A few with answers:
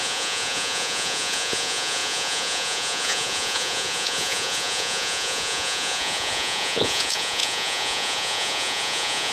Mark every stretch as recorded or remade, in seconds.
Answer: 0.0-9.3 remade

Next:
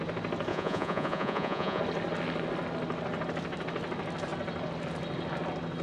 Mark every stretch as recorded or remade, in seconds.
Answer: 0.0-0.5 recorded; 0.5-1.8 remade; 1.8-5.8 recorded

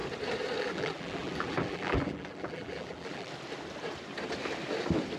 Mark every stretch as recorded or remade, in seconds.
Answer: 0.0-0.6 recorded; 0.6-3.3 remade; 3.3-5.2 recorded

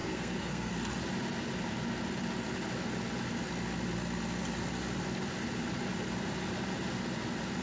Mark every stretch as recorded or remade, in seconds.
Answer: 0.0-0.7 remade; 0.7-7.6 recorded

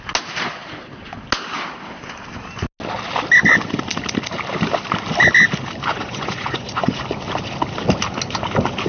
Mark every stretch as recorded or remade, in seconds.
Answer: 0.0-5.9 recorded; 5.9-7.0 remade; 7.0-8.9 recorded

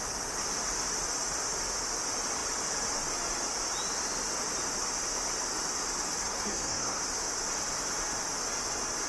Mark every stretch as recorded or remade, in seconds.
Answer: 0.0-6.2 recorded; 6.2-7.0 remade; 7.0-9.1 recorded